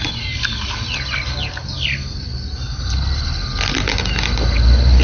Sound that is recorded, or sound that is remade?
recorded